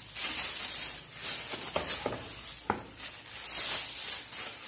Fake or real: real